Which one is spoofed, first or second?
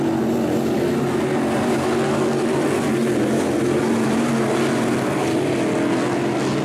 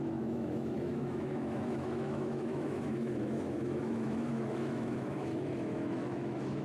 second